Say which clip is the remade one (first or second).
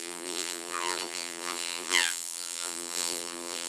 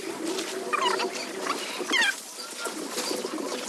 first